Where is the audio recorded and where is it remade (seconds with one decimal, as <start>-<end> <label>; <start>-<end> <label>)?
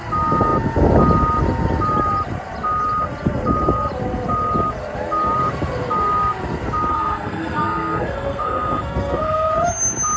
0.0-6.9 recorded; 6.9-9.5 remade; 9.5-10.2 recorded